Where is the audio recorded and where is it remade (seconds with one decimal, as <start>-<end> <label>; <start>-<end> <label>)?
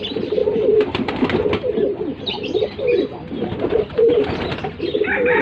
0.0-5.4 recorded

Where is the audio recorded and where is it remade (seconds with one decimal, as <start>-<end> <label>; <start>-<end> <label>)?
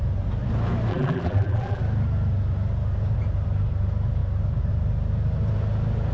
0.0-0.9 recorded; 0.9-1.8 remade; 1.8-6.1 recorded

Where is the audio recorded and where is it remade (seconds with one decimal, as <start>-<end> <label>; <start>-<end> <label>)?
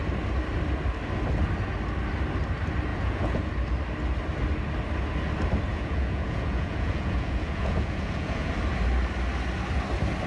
0.0-2.9 recorded; 2.9-3.4 remade; 3.4-5.7 recorded; 5.7-8.5 remade; 8.5-10.3 recorded